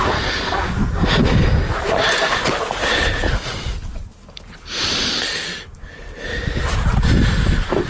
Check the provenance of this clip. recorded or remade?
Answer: recorded